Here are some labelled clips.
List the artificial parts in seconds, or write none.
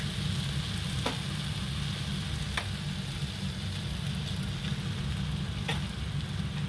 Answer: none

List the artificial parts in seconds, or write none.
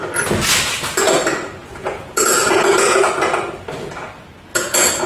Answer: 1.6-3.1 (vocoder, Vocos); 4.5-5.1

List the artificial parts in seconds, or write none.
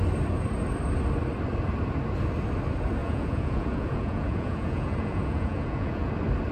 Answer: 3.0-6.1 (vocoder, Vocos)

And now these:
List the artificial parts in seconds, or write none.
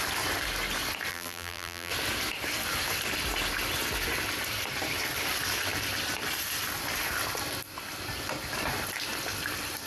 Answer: 1.1-1.9 (vocoder, BigVGAN v2)